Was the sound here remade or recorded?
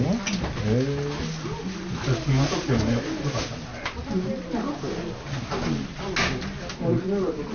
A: recorded